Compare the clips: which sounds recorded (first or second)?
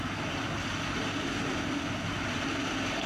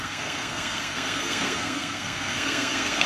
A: first